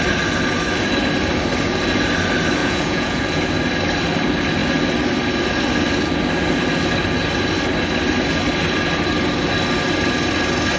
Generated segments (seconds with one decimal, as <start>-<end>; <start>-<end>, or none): 2.6-3.4